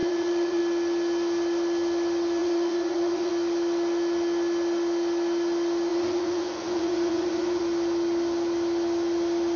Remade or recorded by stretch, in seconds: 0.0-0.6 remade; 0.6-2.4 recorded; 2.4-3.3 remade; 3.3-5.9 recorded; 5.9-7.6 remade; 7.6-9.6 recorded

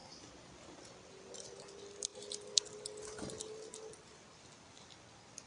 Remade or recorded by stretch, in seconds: 0.0-1.1 recorded; 1.1-5.5 remade

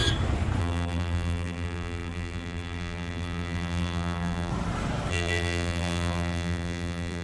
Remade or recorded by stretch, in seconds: 0.0-0.6 recorded; 0.6-4.5 remade; 4.5-5.1 recorded; 5.1-7.2 remade

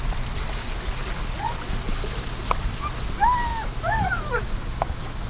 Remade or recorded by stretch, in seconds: 0.0-3.5 recorded; 3.5-5.3 remade

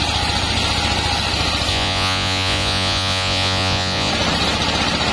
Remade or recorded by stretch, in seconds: 0.0-1.7 recorded; 1.7-4.1 remade; 4.1-5.1 recorded